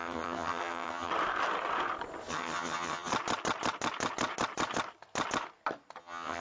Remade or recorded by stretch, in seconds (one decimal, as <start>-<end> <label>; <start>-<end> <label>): 0.0-1.1 remade; 1.1-2.3 recorded; 2.3-3.1 remade; 3.1-6.0 recorded; 6.0-6.4 remade